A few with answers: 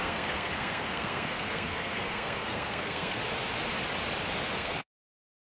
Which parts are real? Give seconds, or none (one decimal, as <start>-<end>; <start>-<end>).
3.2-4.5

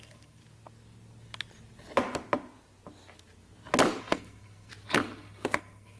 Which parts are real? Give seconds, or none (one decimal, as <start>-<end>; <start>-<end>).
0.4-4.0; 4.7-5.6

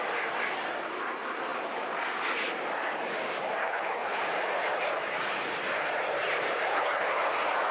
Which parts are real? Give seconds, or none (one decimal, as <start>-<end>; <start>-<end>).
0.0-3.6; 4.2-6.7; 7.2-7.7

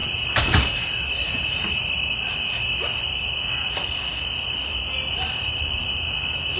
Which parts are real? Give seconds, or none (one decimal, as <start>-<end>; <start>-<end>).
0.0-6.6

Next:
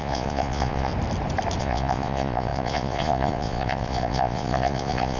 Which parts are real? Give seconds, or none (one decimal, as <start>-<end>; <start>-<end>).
0.9-1.6

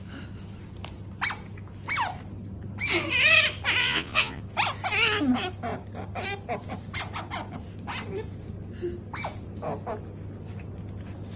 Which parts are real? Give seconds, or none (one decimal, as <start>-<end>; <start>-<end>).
0.0-3.8; 4.4-11.4

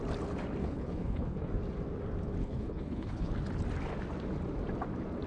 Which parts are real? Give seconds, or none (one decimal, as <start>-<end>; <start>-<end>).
0.0-0.6; 1.5-2.4; 3.3-5.3

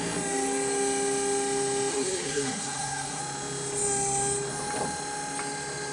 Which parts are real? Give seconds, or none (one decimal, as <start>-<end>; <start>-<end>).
0.0-1.9; 3.2-5.9